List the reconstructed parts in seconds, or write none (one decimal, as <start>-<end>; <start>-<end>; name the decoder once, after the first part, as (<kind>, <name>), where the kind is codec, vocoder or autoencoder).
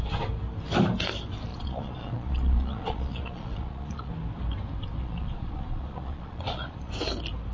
1.5-4.1 (vocoder, Vocos); 5.0-6.9